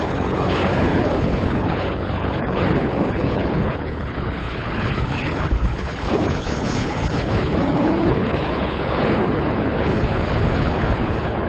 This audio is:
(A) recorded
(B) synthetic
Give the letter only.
B